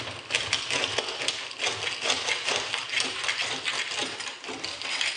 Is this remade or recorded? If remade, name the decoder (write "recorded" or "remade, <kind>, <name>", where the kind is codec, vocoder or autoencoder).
recorded